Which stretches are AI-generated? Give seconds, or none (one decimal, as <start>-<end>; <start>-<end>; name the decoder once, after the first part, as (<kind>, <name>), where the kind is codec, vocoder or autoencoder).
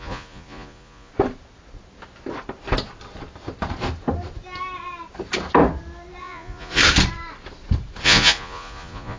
0.0-1.1 (vocoder, Vocos); 6.2-6.8; 8.0-9.2